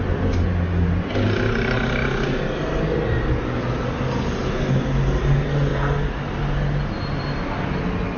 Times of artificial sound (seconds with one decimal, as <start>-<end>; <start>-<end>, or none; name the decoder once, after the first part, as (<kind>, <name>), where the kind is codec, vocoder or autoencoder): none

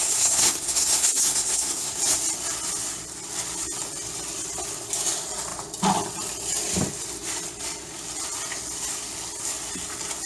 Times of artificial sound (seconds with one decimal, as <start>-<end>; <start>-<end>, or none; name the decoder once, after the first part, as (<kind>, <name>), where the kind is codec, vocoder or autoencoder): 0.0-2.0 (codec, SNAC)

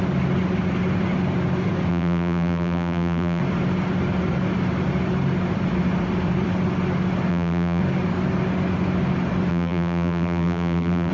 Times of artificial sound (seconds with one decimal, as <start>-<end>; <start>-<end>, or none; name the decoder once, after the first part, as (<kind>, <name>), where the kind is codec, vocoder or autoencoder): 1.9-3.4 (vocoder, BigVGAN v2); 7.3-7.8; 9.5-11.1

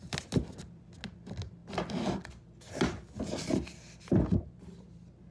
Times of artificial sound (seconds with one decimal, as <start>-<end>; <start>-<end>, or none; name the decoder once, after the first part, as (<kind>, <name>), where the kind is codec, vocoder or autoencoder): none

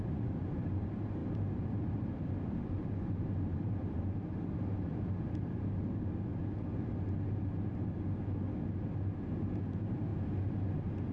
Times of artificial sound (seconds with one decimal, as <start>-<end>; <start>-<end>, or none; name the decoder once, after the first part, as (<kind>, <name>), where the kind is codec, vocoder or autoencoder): 0.0-4.9 (vocoder, BigVGAN v2); 9.7-10.1; 10.6-11.1